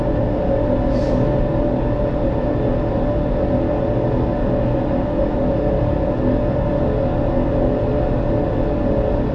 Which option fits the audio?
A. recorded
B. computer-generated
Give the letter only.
A